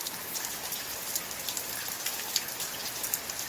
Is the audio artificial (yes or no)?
no